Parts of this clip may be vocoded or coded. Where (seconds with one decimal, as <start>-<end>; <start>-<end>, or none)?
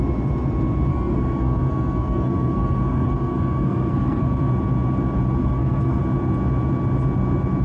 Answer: 0.9-4.5; 5.4-6.0